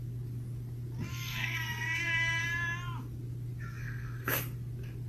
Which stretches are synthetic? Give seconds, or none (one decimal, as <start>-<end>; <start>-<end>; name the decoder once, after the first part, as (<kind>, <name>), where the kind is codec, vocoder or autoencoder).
1.1-2.4 (codec, SNAC); 3.8-4.4